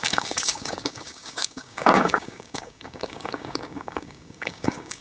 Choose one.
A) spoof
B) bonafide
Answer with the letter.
A